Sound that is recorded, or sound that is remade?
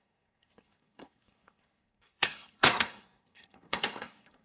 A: remade